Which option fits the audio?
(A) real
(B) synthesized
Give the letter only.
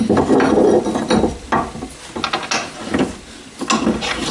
A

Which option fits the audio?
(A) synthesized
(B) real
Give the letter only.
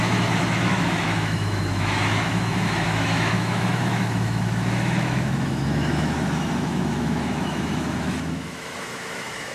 A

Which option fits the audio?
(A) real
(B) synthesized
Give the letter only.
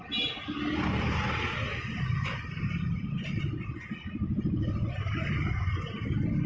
A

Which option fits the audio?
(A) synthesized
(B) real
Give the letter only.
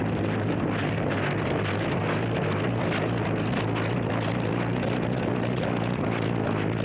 B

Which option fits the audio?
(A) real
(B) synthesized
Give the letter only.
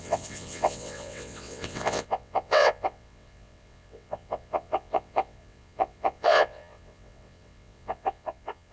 B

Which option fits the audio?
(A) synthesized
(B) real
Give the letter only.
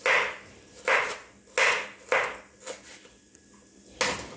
B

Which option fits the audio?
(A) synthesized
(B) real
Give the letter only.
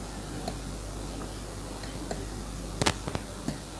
B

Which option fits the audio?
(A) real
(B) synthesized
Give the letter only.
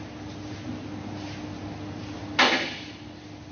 A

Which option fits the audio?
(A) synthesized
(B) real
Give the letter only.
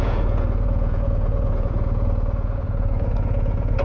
A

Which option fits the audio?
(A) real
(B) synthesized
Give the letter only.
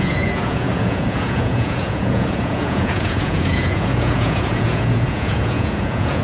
B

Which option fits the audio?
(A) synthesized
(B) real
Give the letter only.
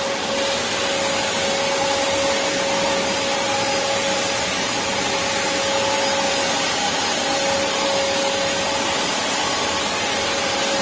B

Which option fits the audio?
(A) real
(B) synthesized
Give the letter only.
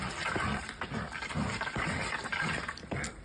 A